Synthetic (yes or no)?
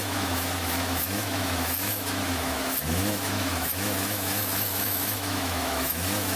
yes